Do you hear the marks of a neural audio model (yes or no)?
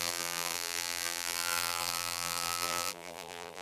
yes